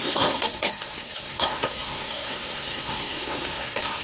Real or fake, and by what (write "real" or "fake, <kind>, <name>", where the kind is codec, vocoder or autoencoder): fake, codec, SNAC